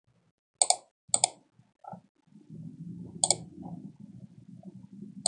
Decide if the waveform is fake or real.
real